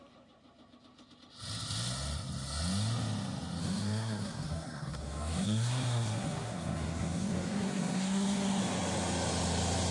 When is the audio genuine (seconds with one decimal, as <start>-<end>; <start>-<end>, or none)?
0.0-3.6; 8.6-9.9